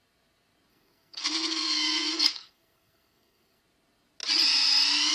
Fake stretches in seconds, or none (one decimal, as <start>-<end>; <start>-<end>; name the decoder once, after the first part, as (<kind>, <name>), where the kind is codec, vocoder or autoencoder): 0.7-3.6 (codec, SNAC)

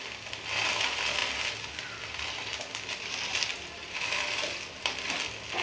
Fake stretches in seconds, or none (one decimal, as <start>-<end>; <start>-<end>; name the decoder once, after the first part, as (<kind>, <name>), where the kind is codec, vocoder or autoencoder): none